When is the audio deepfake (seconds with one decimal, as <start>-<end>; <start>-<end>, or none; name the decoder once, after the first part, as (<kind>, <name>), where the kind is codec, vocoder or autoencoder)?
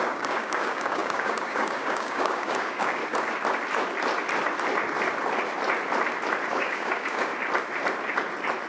0.0-3.0 (codec, DAC); 6.5-7.3